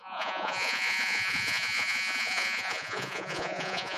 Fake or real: fake